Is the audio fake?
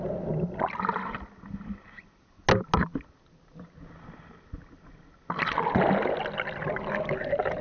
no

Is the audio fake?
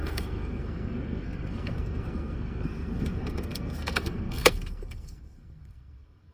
yes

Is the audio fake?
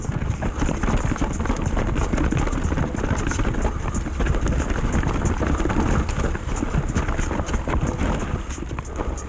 no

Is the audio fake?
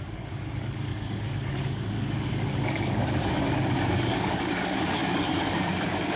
yes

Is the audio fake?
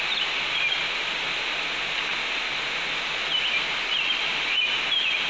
no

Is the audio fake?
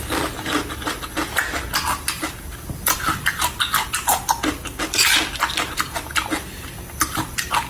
no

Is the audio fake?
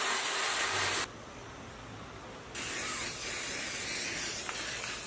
no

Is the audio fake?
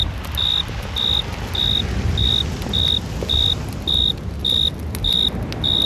no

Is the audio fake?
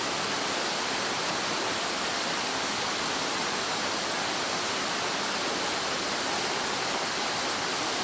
no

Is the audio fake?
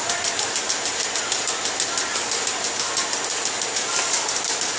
no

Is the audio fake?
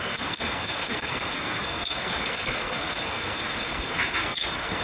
yes